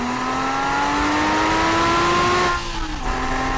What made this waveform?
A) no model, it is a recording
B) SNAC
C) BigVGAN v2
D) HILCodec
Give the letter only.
A